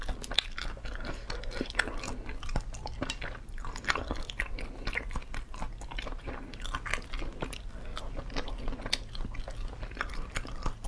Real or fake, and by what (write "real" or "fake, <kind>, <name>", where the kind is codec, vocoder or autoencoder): real